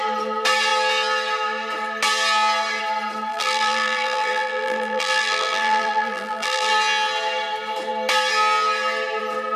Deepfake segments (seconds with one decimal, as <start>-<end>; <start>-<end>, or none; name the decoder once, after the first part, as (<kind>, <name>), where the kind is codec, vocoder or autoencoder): 3.3-6.7 (vocoder, BigVGAN v2)